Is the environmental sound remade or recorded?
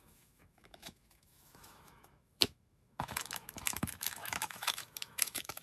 remade